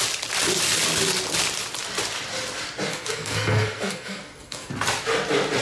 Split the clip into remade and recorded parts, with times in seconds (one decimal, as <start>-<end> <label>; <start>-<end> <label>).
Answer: 0.0-2.9 recorded; 2.9-4.7 remade; 4.7-5.6 recorded